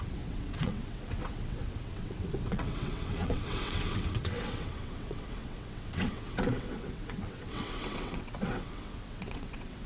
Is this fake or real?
fake